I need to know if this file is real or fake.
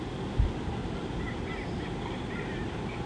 real